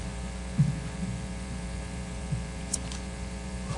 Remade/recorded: remade